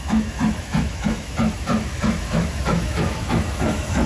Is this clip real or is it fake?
fake